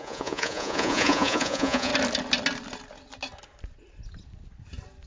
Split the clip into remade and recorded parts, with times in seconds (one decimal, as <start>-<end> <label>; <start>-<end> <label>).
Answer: 0.0-1.9 remade; 1.9-5.1 recorded